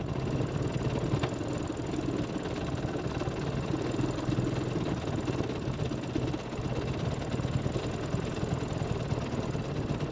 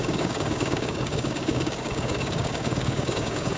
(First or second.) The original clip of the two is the first